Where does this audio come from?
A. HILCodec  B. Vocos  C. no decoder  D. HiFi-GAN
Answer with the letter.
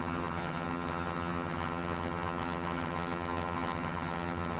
D